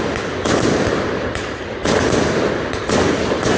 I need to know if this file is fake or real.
real